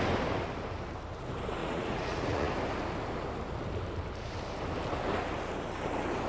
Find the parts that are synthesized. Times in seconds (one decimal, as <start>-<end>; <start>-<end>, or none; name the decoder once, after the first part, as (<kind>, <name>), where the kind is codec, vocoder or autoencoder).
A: 1.6-2.5 (vocoder, Vocos)